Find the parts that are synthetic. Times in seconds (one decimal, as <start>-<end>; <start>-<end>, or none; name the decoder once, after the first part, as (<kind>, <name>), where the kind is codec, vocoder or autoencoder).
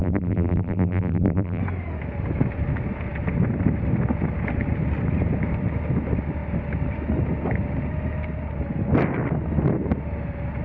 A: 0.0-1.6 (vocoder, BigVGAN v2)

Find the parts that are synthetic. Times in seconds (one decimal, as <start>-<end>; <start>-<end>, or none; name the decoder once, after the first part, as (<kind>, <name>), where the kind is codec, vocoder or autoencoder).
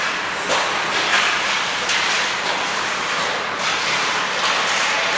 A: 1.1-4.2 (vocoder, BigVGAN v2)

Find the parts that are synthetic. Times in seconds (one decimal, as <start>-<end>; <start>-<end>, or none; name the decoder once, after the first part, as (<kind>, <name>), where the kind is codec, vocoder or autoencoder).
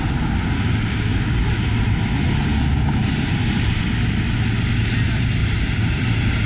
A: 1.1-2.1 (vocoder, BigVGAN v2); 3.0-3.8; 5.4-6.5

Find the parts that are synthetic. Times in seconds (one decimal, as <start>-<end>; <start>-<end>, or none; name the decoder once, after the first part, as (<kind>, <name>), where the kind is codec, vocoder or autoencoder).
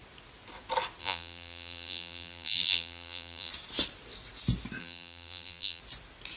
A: 1.0-3.5 (vocoder, BigVGAN v2); 4.8-5.8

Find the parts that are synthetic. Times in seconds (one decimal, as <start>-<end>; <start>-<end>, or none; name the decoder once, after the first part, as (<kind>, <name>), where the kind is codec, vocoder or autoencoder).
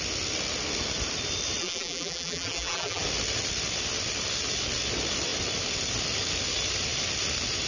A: 1.6-3.0 (vocoder, BigVGAN v2)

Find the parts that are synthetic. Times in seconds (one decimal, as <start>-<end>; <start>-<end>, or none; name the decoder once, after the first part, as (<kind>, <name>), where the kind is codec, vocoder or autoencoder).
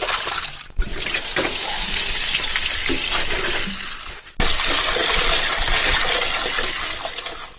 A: 0.9-2.1 (vocoder, BigVGAN v2); 5.0-6.0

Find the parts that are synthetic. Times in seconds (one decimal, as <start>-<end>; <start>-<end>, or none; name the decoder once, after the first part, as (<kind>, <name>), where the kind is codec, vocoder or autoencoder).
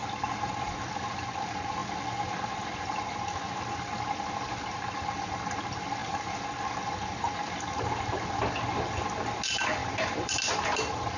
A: 9.8-10.4 (vocoder, BigVGAN v2)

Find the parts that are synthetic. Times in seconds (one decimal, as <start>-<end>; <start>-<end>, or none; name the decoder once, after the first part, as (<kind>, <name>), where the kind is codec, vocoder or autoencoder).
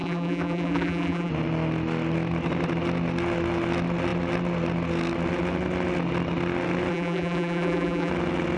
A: 0.0-1.3 (vocoder, BigVGAN v2); 6.9-8.1